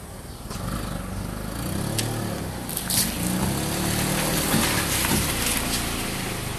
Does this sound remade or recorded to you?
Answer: recorded